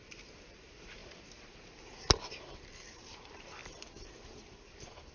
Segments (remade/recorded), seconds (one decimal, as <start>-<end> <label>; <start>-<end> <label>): 0.0-3.6 remade; 3.6-4.2 recorded; 4.2-5.1 remade